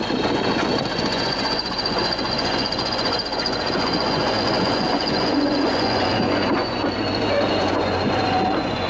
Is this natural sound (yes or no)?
no